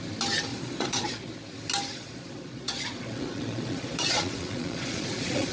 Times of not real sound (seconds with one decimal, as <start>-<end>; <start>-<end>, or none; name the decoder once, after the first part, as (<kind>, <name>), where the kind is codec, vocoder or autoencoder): 0.5-1.3 (vocoder, Vocos); 1.9-5.5